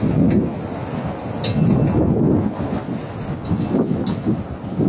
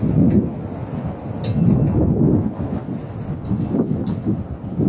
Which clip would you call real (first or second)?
first